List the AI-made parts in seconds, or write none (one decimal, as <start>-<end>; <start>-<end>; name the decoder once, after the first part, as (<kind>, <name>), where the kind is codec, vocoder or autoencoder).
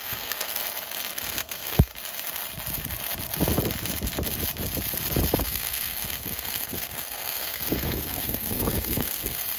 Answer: 0.0-0.6 (codec, SNAC); 1.1-1.9; 5.4-9.6